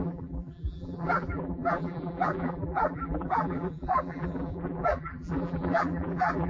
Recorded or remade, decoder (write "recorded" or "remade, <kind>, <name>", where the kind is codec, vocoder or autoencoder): remade, vocoder, BigVGAN v2